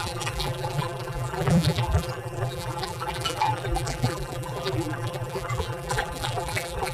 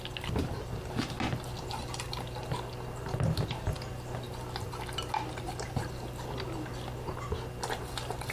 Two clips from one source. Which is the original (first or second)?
second